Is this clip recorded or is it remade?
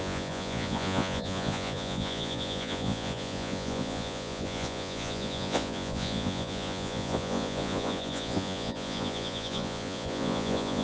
remade